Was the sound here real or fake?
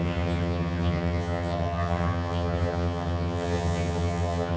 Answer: fake